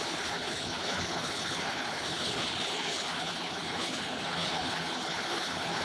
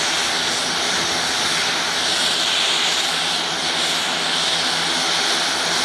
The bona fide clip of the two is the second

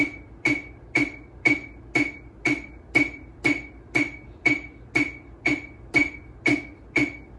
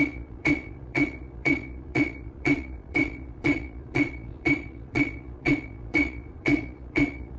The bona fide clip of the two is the first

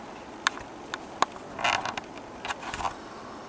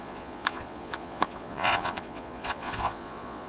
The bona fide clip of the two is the first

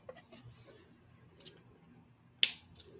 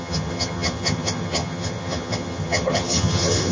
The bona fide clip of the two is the first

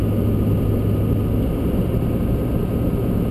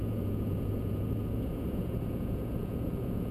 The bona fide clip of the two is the first